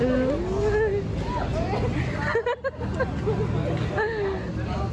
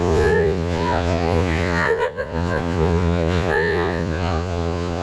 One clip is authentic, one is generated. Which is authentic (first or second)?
first